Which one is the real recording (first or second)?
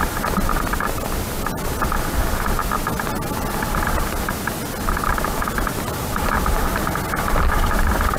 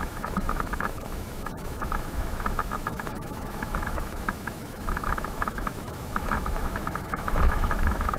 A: first